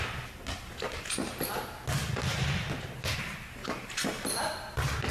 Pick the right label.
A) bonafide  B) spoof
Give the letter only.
A